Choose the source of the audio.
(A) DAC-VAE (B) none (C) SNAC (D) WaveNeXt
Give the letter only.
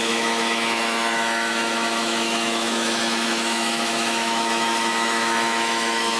A